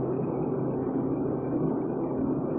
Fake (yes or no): yes